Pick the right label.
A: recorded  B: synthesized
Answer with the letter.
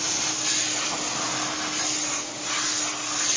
A